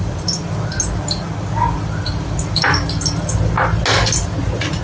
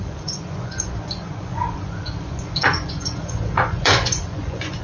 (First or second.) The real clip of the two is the first